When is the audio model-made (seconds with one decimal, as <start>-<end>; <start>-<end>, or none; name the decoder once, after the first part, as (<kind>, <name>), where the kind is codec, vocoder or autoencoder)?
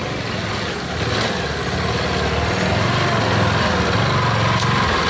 none